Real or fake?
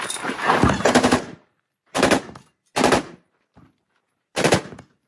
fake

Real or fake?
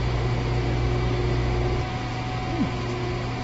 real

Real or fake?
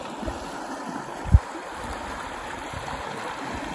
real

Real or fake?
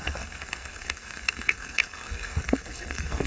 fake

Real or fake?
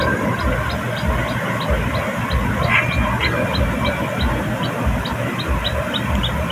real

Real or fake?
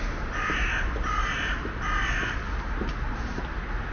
real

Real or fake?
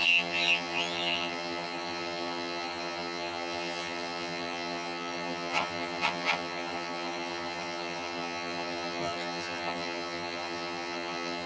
fake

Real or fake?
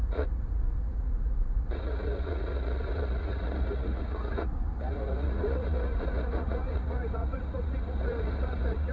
fake